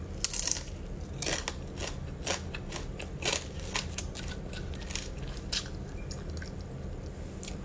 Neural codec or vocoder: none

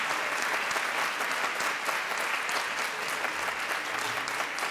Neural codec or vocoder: none